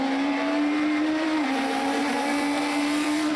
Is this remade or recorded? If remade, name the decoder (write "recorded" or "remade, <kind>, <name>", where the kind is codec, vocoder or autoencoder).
remade, vocoder, BigVGAN v2